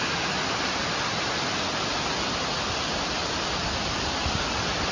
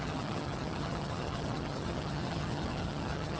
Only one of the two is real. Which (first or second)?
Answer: first